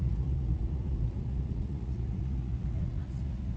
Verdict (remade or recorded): remade